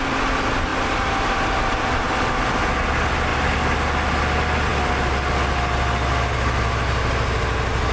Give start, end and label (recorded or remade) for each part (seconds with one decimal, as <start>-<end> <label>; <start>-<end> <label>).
0.0-7.9 recorded